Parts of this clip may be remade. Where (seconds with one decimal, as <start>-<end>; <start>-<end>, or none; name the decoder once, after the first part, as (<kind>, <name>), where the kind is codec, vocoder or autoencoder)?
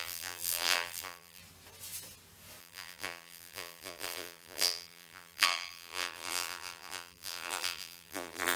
0.0-1.4 (vocoder, BigVGAN v2); 2.6-8.6